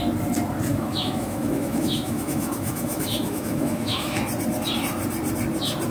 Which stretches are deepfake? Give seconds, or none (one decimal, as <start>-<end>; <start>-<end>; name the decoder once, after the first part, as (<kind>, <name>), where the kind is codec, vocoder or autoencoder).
0.7-4.2 (autoencoder, DAC-VAE)